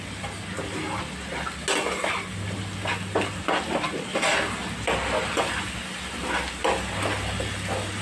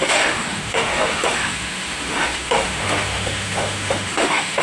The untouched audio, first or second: first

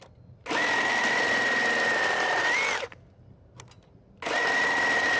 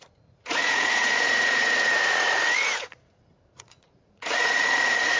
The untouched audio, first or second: first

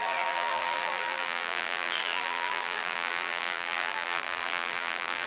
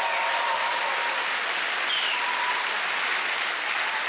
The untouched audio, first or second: second